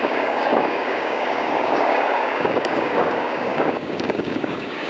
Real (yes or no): no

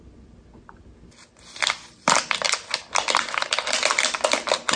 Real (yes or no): yes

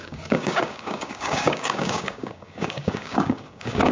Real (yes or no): no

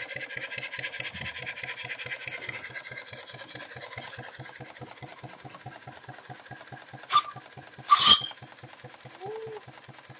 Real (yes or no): yes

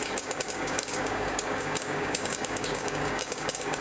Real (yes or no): no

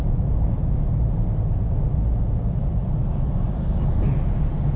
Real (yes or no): yes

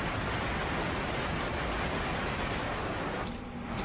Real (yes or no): yes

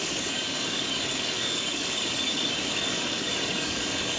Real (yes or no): no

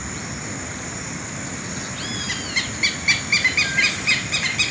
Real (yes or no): yes